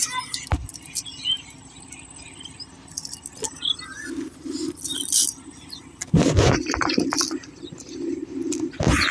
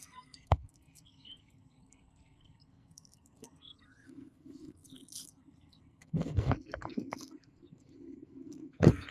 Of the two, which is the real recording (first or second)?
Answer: first